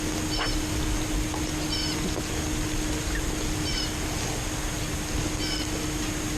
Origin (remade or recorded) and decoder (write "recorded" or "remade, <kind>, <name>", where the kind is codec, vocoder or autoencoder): recorded